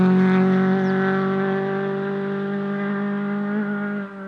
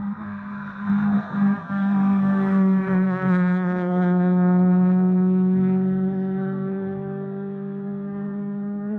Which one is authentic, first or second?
first